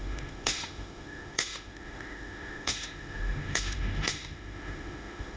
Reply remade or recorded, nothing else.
remade